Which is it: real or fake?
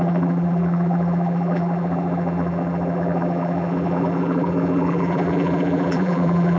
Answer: fake